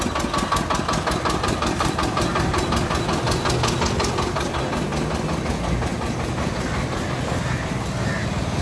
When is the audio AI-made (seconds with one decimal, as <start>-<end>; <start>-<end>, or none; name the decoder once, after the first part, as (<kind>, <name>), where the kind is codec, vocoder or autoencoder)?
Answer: none

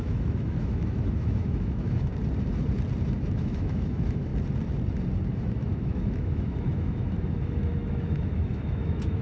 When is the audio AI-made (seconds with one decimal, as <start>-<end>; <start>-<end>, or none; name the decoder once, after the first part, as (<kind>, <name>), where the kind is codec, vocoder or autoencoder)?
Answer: 0.0-2.1 (autoencoder, DAC-VAE); 3.3-4.3; 5.3-9.2

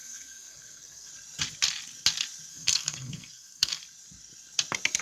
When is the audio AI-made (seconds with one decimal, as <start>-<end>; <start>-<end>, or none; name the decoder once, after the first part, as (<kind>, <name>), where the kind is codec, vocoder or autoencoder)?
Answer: 0.0-1.1 (codec, SNAC); 2.5-3.8

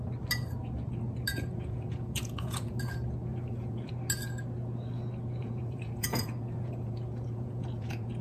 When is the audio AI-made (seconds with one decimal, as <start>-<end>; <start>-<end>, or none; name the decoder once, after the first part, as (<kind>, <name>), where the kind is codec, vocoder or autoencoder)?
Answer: 1.3-2.8 (vocoder, Vocos); 3.3-3.9; 5.4-8.2

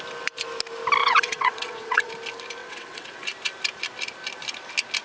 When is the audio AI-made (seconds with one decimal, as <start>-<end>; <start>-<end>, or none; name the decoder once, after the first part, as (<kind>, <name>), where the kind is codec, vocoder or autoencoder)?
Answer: 1.0-2.1 (vocoder, WaveNeXt); 2.6-3.2

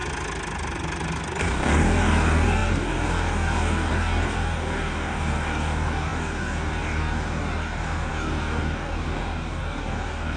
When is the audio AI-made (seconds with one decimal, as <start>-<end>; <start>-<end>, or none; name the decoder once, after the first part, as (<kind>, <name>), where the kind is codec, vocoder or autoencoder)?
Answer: 1.4-10.4 (codec, DAC)